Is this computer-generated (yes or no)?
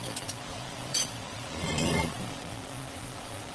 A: yes